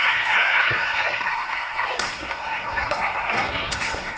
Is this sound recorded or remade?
remade